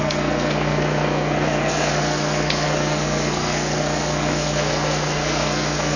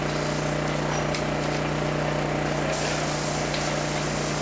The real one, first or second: second